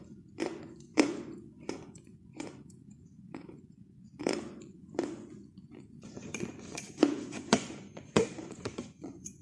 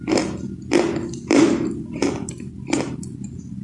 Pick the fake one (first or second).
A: first